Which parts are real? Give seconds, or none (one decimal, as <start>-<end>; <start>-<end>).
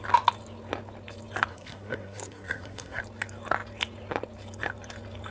0.0-1.5; 3.0-5.3